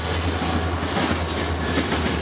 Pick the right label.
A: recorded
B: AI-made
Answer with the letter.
A